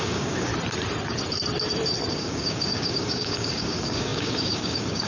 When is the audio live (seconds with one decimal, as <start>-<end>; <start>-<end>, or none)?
0.5-2.1